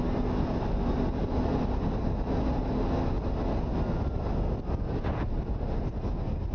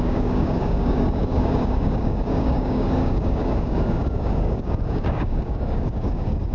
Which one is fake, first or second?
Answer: second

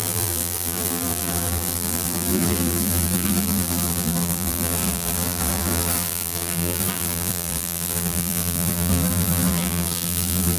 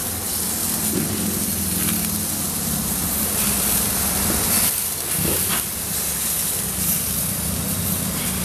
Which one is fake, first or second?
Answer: first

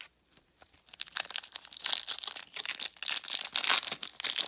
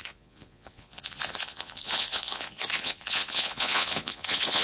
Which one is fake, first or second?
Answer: second